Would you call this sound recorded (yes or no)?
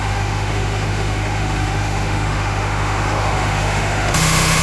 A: no